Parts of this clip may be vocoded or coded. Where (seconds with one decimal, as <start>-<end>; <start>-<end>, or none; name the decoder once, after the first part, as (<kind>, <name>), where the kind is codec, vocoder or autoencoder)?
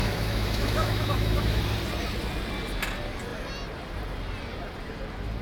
0.0-1.6 (autoencoder, DAC-VAE)